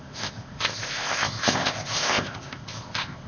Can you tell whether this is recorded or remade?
remade